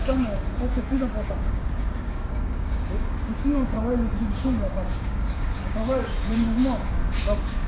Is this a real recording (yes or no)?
no